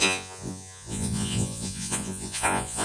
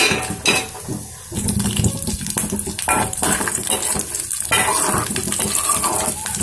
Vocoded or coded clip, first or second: first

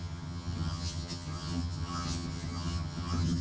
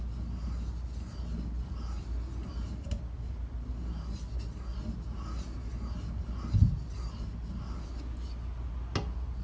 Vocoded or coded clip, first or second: first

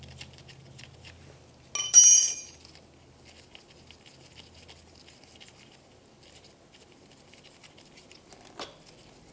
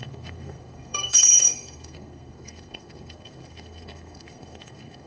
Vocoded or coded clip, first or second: second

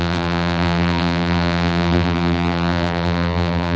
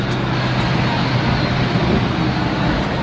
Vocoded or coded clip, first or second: first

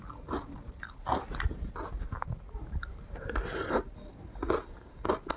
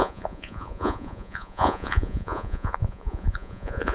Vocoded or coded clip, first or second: second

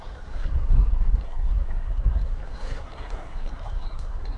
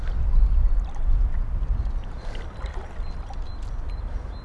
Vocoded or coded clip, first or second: first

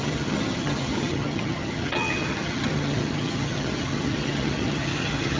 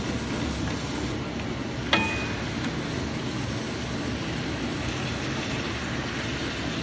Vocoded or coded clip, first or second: first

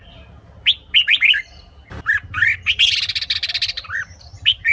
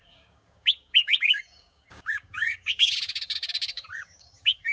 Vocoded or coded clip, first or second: second